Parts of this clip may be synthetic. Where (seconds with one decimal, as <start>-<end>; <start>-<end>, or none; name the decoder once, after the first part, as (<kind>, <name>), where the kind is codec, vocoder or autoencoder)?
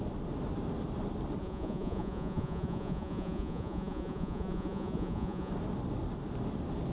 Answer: 1.4-5.5 (vocoder, Vocos)